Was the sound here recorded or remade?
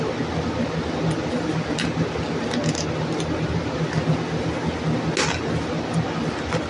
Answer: recorded